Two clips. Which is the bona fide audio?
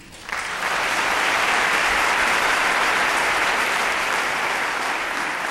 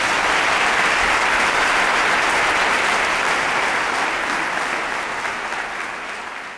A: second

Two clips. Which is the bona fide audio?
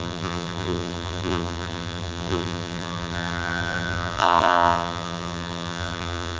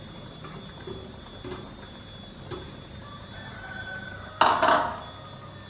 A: second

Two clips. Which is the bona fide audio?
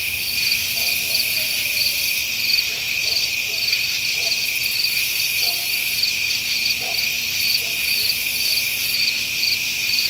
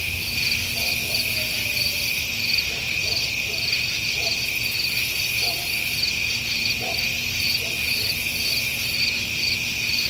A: second